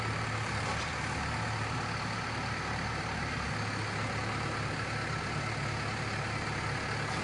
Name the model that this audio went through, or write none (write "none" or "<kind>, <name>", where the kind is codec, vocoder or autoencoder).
none